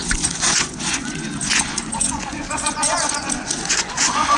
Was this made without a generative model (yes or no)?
no